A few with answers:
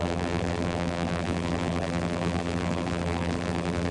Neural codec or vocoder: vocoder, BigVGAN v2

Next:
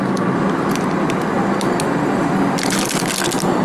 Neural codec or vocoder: none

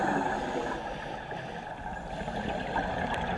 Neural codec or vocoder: none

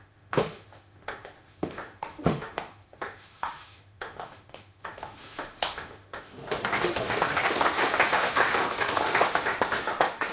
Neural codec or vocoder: autoencoder, DAC-VAE